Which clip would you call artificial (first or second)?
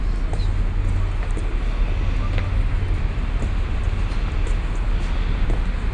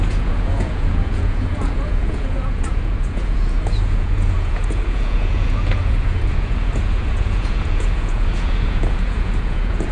second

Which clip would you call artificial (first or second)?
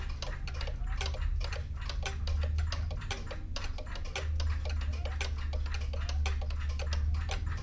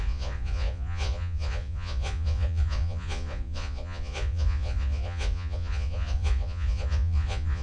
second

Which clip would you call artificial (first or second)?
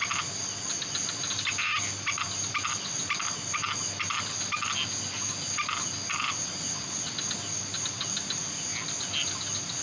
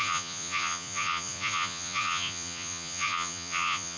second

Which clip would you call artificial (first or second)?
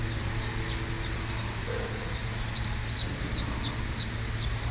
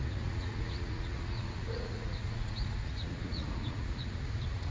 second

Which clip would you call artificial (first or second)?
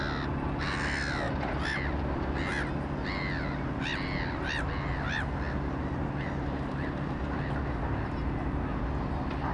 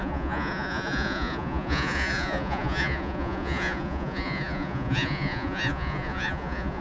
second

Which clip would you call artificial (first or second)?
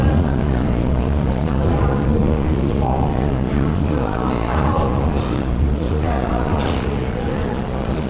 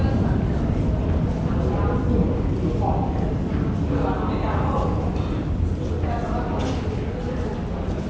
first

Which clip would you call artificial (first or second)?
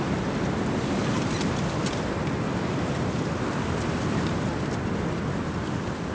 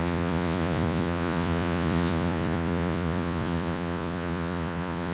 second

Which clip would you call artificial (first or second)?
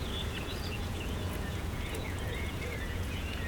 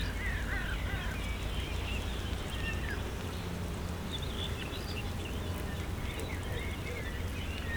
first